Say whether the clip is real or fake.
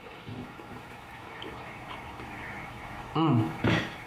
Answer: fake